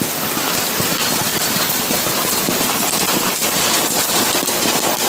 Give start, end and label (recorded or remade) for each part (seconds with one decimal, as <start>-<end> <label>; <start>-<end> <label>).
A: 0.0-1.3 recorded; 1.3-4.4 remade; 4.4-5.1 recorded